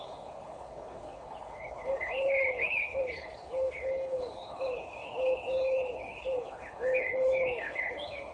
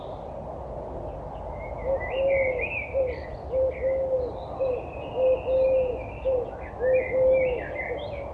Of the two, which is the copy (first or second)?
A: first